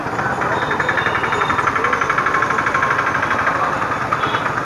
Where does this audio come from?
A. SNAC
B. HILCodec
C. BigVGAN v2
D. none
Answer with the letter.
D